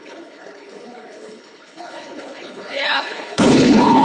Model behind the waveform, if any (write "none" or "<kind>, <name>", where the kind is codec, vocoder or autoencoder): codec, HILCodec